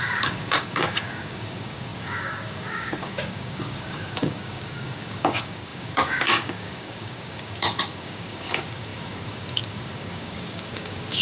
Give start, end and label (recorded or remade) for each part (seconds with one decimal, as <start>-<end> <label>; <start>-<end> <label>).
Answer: 0.0-11.2 remade